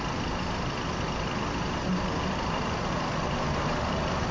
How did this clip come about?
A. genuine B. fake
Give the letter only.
A